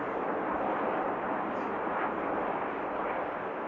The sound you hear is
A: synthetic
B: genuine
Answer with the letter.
B